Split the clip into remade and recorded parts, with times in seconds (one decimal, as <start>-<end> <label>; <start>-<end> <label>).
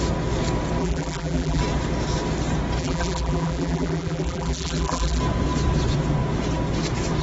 0.0-0.8 recorded; 0.8-1.6 remade; 1.6-2.8 recorded; 2.8-5.2 remade; 5.2-7.2 recorded